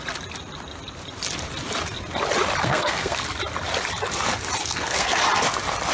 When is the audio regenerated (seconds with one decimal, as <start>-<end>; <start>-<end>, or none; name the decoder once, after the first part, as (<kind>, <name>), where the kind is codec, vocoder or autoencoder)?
2.6-3.2 (codec, SNAC); 4.6-5.2